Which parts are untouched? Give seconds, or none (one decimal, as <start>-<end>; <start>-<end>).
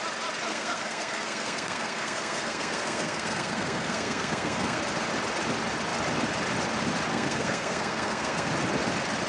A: 0.0-0.5; 4.8-7.1; 8.5-9.3